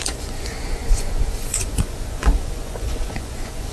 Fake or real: fake